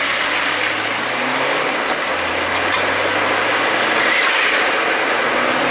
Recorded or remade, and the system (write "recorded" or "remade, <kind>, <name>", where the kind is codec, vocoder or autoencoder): recorded